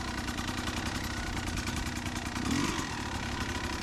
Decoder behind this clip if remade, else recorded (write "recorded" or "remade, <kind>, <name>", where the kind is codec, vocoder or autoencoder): recorded